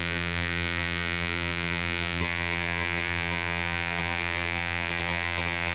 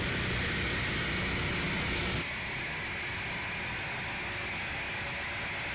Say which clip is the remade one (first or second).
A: first